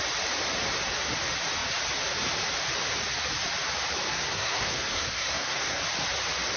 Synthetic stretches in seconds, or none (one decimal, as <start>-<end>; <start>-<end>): 4.1-5.8